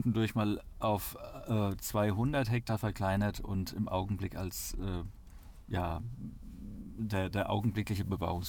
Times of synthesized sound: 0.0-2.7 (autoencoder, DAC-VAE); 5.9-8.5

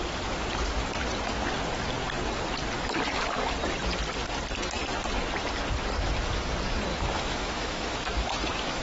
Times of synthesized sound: 6.9-8.8 (autoencoder, DAC-VAE)